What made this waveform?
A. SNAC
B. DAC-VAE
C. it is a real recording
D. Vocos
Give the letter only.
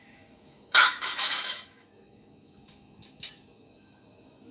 B